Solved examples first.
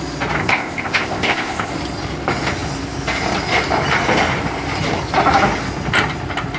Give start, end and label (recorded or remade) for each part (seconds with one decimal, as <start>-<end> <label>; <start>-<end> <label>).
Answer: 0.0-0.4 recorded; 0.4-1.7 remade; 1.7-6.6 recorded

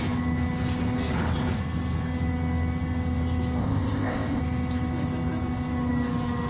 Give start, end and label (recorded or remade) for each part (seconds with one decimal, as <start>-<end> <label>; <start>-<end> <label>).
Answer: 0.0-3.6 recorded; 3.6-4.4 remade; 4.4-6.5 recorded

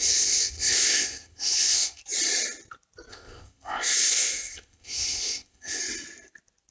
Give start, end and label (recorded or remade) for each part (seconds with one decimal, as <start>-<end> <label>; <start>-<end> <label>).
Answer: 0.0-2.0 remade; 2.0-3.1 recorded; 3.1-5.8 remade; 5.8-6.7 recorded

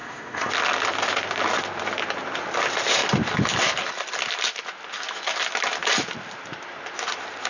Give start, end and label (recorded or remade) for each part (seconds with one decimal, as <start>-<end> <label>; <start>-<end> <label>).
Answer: 0.0-0.5 remade; 0.5-7.5 recorded

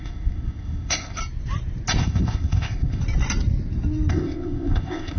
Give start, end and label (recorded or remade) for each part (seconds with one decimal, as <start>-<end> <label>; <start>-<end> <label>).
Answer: 0.0-1.2 remade; 1.2-2.0 recorded; 2.0-3.0 remade; 3.0-4.1 recorded; 4.1-5.2 remade